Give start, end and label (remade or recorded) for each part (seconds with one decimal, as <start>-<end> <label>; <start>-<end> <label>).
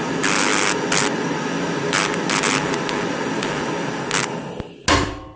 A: 0.0-5.4 recorded